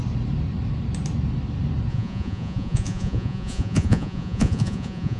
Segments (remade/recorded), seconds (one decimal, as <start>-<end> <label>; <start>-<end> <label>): 0.0-1.9 recorded; 1.9-5.2 remade